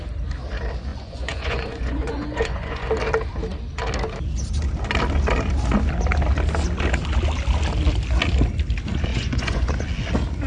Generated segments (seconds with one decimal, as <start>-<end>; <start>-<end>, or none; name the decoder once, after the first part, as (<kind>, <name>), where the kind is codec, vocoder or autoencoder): 0.9-2.9 (vocoder, Vocos); 9.1-9.7